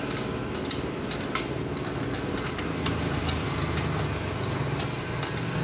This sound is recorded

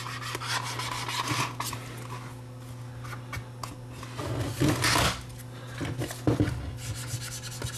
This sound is recorded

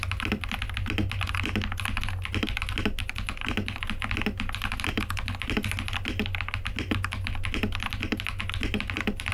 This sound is recorded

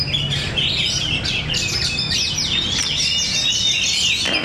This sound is recorded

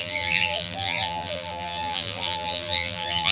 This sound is remade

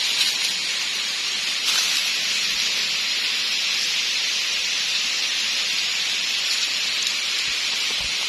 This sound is remade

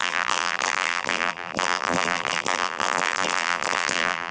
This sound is remade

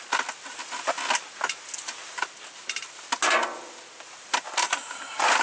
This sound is recorded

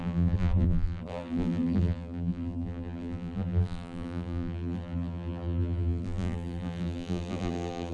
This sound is remade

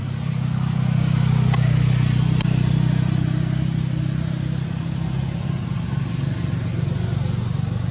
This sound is recorded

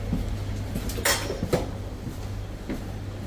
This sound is recorded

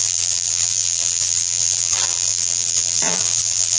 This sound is remade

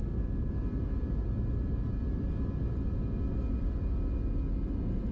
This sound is recorded